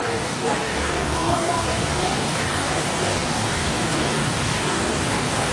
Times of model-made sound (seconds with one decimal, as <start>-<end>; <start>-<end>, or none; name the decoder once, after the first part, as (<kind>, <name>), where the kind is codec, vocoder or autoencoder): 0.0-5.5 (codec, DAC)